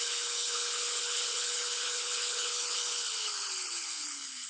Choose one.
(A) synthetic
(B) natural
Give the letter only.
A